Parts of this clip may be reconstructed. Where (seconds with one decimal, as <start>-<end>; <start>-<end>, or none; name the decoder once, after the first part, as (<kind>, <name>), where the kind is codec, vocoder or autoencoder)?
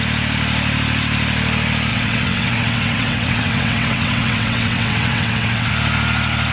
1.9-5.7 (vocoder, WaveNeXt)